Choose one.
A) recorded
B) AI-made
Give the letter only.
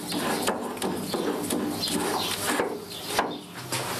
A